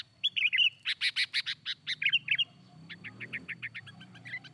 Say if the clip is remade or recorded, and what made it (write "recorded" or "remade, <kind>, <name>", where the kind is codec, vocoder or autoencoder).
recorded